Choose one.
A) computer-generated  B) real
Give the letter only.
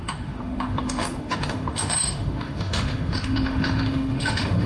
A